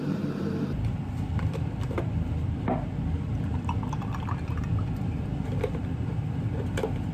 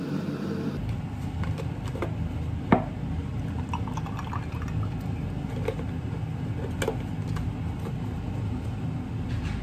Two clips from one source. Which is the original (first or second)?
second